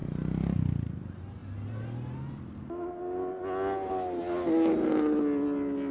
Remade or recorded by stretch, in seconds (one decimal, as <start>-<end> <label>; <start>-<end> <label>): 0.0-5.9 recorded